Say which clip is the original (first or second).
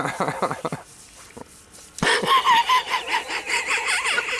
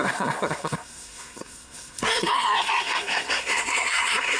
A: first